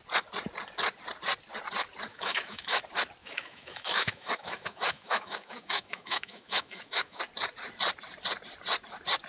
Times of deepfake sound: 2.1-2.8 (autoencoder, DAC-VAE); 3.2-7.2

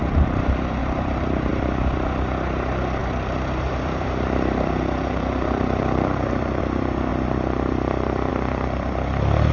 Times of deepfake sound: 0.8-1.5 (vocoder, BigVGAN v2); 3.0-6.6

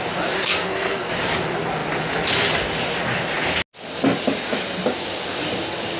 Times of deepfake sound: 0.4-1.1 (codec, SNAC)